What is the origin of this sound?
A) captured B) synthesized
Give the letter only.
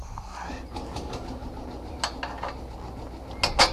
A